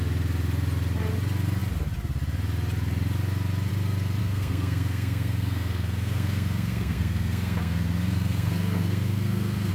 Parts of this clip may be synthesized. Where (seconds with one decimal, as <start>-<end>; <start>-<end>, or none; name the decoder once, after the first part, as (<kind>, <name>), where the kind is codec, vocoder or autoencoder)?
4.2-9.7 (codec, SNAC)